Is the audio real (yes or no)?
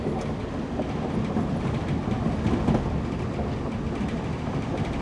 yes